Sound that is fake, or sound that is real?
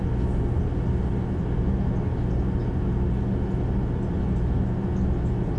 real